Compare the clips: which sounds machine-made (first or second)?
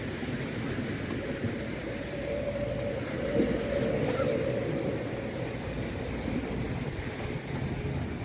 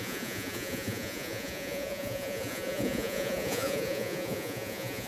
second